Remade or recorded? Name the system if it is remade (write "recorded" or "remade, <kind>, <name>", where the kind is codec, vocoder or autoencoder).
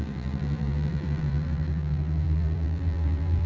remade, vocoder, BigVGAN v2